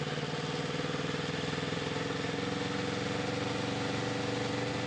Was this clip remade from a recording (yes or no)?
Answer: no